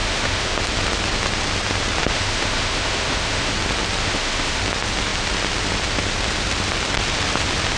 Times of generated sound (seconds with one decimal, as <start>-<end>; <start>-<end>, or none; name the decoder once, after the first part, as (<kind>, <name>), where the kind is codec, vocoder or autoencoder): 0.0-0.6 (autoencoder, DAC-VAE); 2.0-3.5; 4.0-4.6